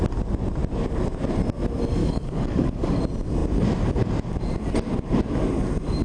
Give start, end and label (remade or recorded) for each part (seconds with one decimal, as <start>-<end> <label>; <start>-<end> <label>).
0.0-2.0 recorded; 2.0-3.0 remade; 3.0-6.0 recorded